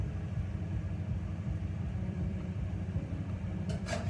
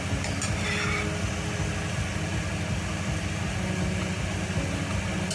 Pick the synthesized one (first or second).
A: first